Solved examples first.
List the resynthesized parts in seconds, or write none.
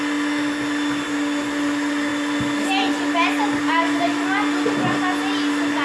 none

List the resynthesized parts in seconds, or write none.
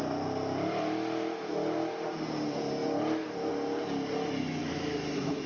4.6-5.5 (autoencoder, DAC-VAE)